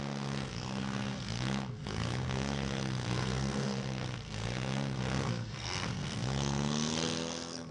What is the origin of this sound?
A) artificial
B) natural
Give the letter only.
A